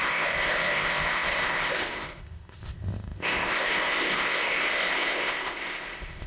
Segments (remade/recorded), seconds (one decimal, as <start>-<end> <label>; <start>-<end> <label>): 0.0-6.3 remade